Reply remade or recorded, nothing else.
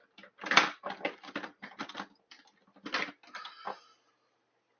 recorded